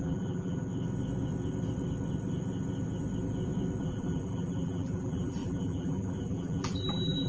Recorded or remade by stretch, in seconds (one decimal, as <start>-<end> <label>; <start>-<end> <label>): 0.0-0.6 remade; 0.6-3.8 recorded; 3.8-7.3 remade